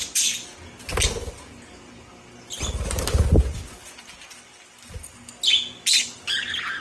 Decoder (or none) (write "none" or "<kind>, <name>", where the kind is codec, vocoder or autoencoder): none